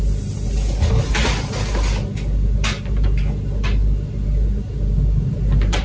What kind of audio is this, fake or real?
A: real